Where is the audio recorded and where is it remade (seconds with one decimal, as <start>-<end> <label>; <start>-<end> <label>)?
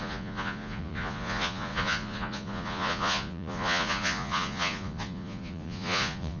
0.0-6.4 remade